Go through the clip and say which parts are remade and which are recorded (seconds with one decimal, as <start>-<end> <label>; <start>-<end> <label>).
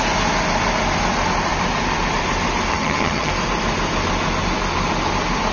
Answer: 0.0-2.7 recorded; 2.7-3.3 remade; 3.3-5.5 recorded